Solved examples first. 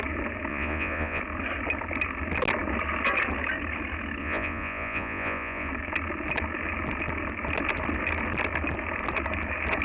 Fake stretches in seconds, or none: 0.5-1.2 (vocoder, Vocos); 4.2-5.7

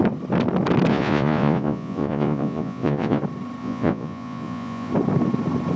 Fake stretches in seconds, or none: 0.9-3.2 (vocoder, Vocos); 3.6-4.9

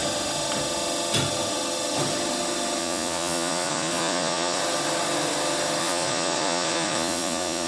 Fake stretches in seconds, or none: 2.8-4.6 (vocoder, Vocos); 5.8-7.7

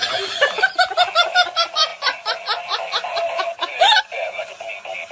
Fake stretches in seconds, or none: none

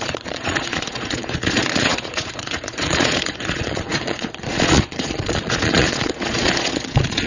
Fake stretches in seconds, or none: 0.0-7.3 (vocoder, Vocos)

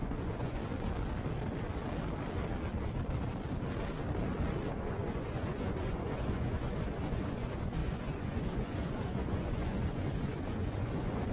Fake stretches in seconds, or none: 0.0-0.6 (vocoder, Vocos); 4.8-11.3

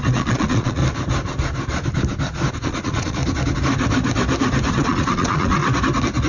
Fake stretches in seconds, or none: 0.0-0.8 (vocoder, Vocos); 2.5-3.2; 4.7-5.6

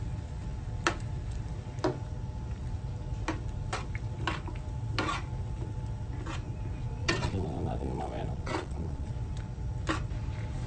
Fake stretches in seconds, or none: 7.0-9.1 (vocoder, Vocos)